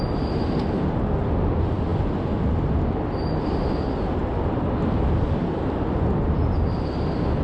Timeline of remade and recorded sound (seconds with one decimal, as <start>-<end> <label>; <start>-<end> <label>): 0.0-7.4 recorded